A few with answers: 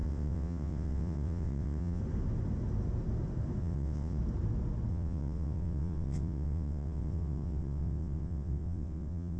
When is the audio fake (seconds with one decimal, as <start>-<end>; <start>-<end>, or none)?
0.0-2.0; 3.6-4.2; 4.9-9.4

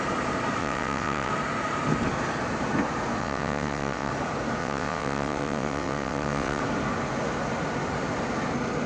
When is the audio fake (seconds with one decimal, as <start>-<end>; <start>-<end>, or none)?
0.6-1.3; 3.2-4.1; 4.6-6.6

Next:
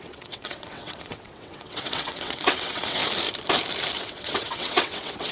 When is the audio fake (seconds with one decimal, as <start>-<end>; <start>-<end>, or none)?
0.0-3.0; 4.0-5.3